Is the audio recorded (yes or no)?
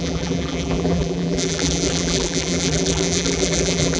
no